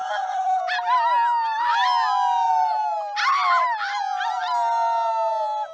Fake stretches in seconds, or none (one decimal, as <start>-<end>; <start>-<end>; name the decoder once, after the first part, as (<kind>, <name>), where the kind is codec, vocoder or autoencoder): 0.0-0.6 (codec, SNAC)